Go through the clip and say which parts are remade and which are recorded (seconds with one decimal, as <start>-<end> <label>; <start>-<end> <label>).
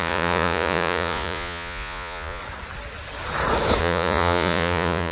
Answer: 0.0-2.4 remade; 2.4-3.8 recorded; 3.8-5.1 remade